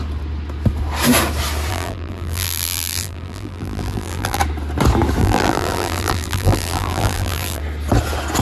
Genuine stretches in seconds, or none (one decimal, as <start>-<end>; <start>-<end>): 0.0-1.7; 4.4-5.2; 7.6-8.4